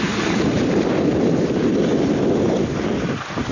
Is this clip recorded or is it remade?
remade